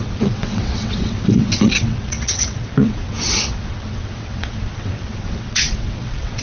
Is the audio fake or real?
fake